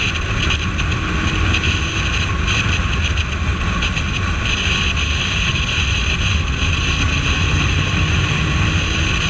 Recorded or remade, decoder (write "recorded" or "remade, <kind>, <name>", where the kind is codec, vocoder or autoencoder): recorded